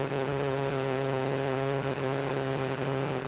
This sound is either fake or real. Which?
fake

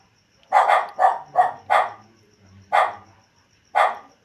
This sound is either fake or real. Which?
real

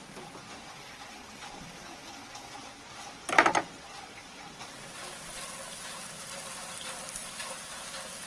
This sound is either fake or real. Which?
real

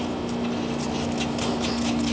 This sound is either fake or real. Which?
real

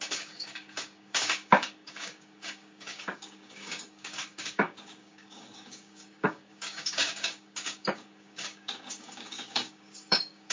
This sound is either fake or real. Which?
fake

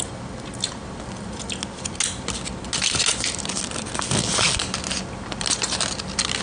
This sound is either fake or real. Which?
real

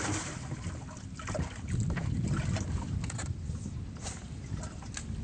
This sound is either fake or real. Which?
real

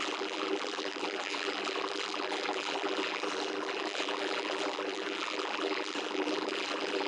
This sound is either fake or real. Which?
fake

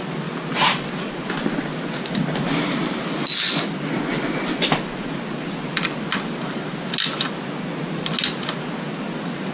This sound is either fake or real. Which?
real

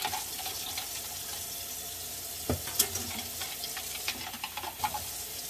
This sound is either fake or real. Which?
real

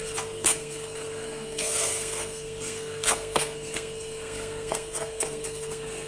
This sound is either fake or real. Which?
fake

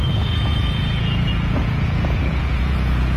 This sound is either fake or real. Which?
fake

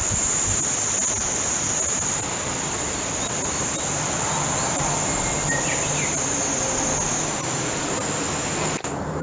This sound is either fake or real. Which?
real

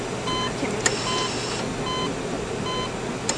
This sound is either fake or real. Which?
real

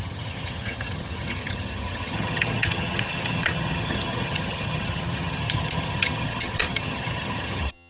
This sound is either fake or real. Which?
fake